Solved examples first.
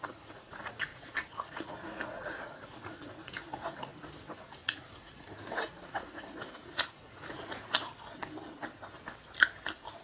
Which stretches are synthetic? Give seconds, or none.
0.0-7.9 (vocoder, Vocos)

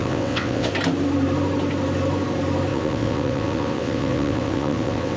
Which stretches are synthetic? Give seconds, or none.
0.0-0.7 (vocoder, WaveNeXt); 2.7-5.2

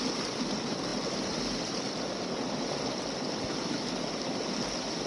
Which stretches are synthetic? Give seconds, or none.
none

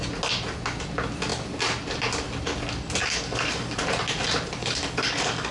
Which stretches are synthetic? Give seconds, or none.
3.0-3.8 (codec, DAC); 4.6-5.5

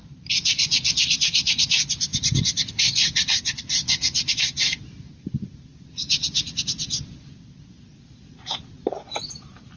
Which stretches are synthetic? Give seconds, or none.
0.0-9.8 (vocoder, BigVGAN v2)

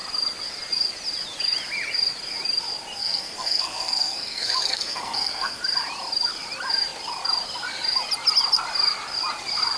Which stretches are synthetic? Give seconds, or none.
3.0-5.6 (codec, SNAC)

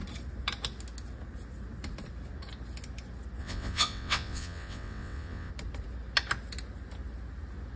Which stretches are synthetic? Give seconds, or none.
3.4-5.5 (vocoder, WaveNeXt)